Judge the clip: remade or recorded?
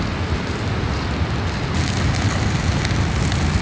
recorded